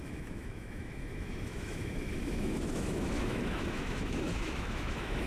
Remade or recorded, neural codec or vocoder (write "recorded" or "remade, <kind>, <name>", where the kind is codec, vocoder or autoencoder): remade, autoencoder, DAC-VAE